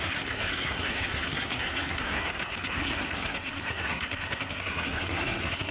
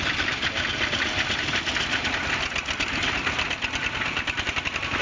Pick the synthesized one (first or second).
first